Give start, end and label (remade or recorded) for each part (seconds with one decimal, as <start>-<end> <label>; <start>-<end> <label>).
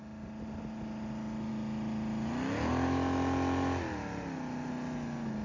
0.0-5.4 recorded